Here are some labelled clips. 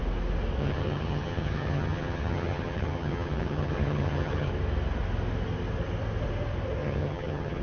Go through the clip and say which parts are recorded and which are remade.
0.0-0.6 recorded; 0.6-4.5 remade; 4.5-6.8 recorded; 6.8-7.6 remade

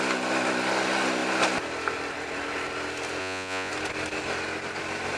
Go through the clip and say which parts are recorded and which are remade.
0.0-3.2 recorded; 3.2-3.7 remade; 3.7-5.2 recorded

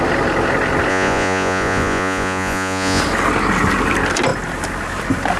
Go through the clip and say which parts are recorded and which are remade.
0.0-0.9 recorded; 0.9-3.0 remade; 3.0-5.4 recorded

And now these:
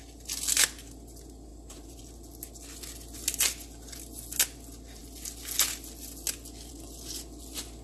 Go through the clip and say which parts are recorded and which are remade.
0.0-1.5 recorded; 1.5-2.0 remade; 2.0-7.8 recorded